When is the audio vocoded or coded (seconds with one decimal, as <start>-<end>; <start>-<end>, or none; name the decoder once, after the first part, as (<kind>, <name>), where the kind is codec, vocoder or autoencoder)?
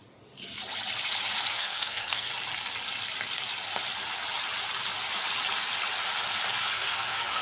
1.5-2.3 (codec, SNAC); 6.7-7.4